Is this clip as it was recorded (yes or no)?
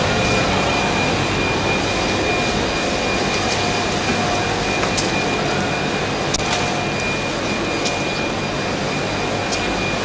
yes